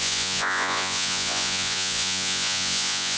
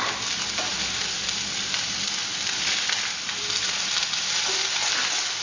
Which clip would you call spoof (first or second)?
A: first